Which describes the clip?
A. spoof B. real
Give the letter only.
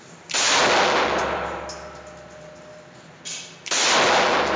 B